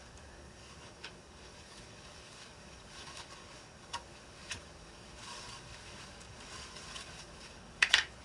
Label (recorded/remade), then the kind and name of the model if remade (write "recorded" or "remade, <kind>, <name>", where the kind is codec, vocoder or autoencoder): remade, codec, DAC